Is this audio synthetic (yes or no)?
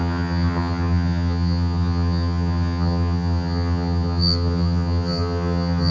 yes